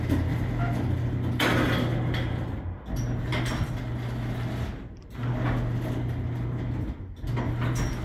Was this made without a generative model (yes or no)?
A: yes